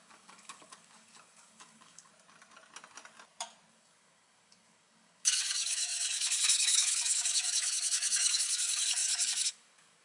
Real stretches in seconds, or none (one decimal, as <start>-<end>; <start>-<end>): 2.1-3.7